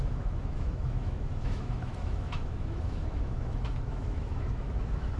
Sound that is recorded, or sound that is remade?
remade